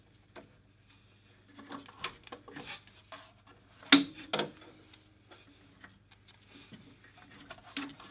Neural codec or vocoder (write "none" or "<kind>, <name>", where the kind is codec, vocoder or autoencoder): none